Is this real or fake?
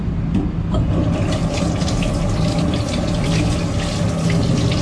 real